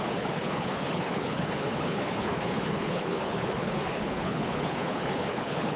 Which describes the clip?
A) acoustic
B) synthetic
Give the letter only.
B